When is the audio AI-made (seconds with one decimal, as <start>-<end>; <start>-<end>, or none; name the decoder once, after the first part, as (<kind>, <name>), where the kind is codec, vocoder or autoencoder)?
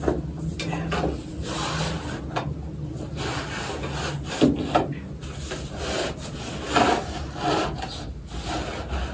none